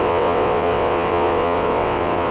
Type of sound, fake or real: fake